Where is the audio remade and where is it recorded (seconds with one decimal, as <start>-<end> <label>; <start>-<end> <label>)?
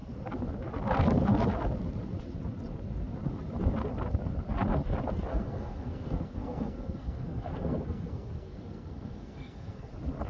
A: 0.0-5.3 recorded; 5.3-9.9 remade; 9.9-10.3 recorded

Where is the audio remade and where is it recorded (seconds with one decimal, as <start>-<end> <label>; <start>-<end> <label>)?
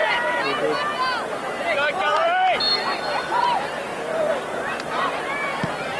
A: 0.0-6.0 recorded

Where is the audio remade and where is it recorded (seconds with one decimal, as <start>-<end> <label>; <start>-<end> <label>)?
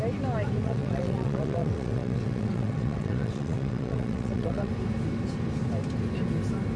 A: 0.0-0.6 recorded; 0.6-4.7 remade; 4.7-6.8 recorded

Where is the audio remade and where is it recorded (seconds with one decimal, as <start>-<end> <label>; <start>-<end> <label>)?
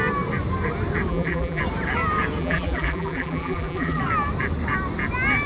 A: 0.0-1.1 recorded; 1.1-1.6 remade; 1.6-2.4 recorded; 2.4-4.0 remade; 4.0-5.5 recorded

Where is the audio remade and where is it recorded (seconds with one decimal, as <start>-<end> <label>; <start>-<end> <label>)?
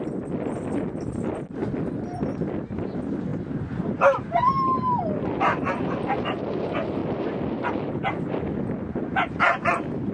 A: 0.0-10.1 recorded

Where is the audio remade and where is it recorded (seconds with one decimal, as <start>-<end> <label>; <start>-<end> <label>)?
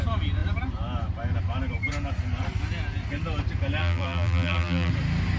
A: 0.0-3.8 recorded; 3.8-4.9 remade; 4.9-5.4 recorded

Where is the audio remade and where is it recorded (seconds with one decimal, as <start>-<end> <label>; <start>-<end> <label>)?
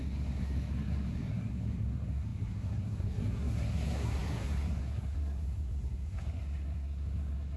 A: 0.0-7.6 remade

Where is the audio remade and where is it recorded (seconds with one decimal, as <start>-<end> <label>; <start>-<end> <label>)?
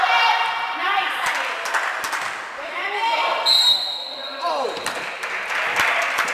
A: 0.0-6.3 recorded